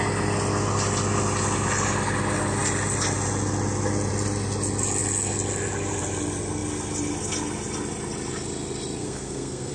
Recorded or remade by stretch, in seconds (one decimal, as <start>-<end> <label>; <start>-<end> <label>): 0.0-9.0 recorded; 9.0-9.7 remade